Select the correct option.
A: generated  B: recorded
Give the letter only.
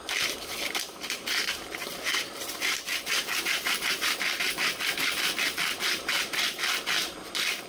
A